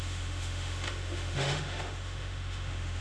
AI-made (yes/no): yes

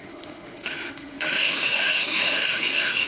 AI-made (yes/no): yes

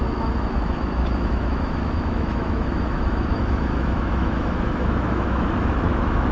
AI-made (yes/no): yes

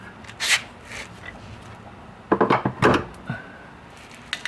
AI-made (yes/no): no